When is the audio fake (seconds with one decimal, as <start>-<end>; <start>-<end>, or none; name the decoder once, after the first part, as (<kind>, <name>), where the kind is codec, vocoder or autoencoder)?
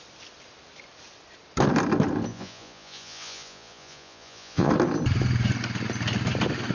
2.3-4.7 (vocoder, Vocos)